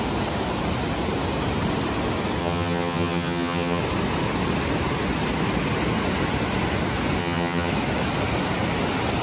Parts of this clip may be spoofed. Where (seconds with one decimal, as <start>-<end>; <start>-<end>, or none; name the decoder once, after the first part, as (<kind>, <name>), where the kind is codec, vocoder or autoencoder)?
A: 2.4-3.8 (vocoder, HiFi-GAN); 7.2-7.7